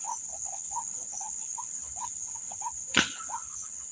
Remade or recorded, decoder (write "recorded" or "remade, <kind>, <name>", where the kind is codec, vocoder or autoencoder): remade, codec, HILCodec